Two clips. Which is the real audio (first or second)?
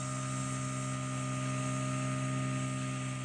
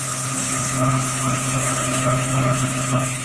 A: first